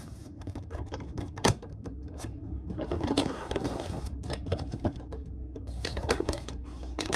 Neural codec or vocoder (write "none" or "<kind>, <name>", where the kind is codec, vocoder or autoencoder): codec, SNAC